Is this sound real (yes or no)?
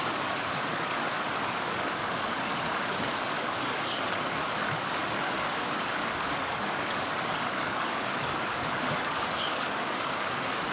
no